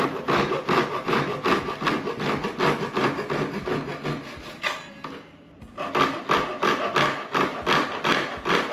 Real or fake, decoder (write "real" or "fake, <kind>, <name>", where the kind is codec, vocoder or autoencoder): real